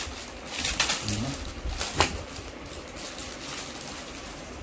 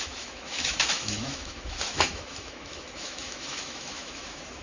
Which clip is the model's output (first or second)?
second